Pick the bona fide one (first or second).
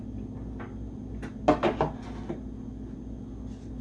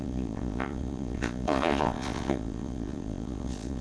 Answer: first